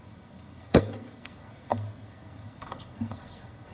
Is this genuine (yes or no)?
no